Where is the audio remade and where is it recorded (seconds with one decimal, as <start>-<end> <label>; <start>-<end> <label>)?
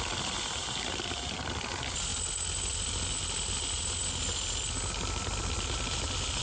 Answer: 0.0-6.4 recorded